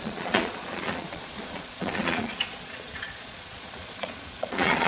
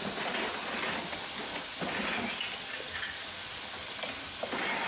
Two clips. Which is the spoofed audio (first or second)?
first